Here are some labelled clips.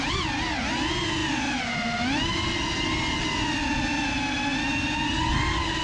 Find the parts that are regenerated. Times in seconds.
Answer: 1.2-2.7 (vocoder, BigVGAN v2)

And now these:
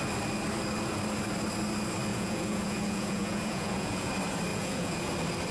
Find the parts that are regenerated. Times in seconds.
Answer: 2.1-4.1 (vocoder, Vocos); 4.5-5.1

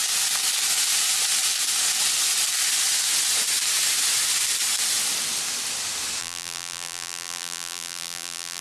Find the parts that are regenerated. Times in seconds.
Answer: 6.2-8.6 (vocoder, BigVGAN v2)

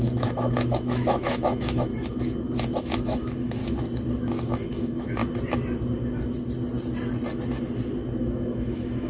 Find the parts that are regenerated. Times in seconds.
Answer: 0.0-1.9 (autoencoder, DAC-VAE); 2.8-3.6; 4.4-5.2; 8.2-9.1